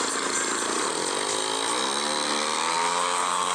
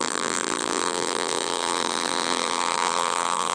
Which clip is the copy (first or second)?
second